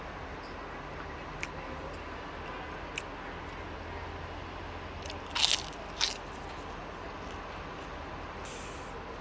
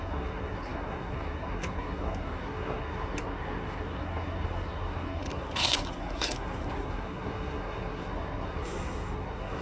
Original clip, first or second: first